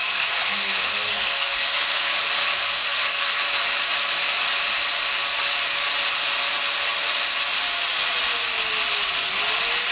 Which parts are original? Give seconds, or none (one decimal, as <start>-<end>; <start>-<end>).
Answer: 2.1-2.5; 3.4-9.9

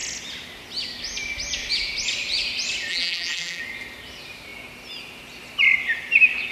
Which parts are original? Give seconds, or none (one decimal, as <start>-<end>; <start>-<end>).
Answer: 0.0-2.9; 3.6-6.5

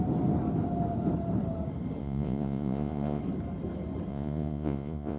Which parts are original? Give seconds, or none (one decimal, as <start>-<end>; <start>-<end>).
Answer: 0.0-2.0; 3.2-4.1

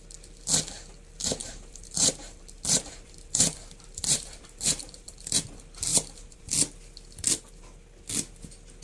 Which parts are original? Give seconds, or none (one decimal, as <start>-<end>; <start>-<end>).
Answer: 0.0-1.4; 5.3-5.9; 6.5-8.8

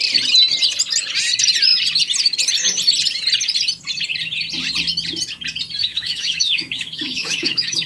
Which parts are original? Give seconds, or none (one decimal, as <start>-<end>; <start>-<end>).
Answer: 0.0-5.8

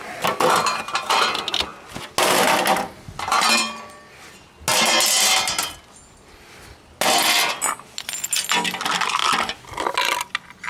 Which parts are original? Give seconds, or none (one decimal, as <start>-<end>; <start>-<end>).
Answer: 0.0-10.7

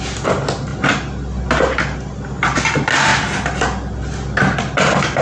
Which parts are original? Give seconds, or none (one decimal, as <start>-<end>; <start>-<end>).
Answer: 0.0-5.2

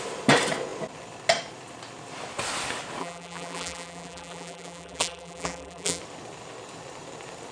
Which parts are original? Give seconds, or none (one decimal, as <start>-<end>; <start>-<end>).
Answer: 0.0-3.0; 6.0-7.5